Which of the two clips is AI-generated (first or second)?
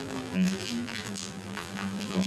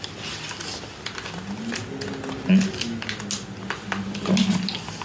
first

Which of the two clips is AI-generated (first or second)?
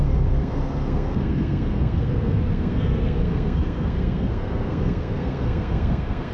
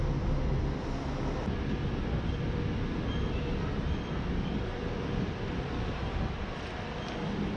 first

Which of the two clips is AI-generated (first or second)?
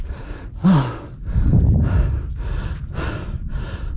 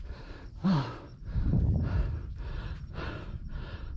second